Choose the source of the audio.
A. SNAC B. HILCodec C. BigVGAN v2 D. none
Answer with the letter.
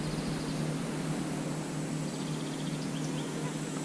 D